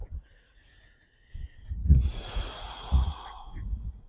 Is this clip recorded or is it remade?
remade